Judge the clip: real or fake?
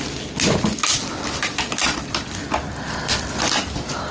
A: real